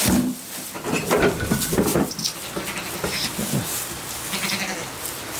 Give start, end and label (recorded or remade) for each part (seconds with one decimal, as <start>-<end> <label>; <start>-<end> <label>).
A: 0.0-5.4 recorded